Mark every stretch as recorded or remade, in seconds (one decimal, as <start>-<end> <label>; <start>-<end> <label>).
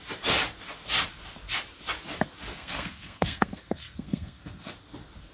0.0-2.5 recorded; 2.5-4.7 remade; 4.7-5.3 recorded